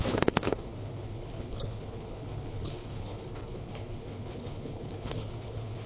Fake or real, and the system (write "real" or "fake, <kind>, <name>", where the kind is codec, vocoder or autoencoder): fake, codec, HILCodec